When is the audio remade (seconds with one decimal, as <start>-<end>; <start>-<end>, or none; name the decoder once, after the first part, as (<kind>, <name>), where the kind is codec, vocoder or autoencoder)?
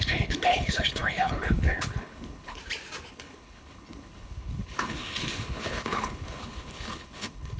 0.0-2.6 (codec, HILCodec); 3.1-7.6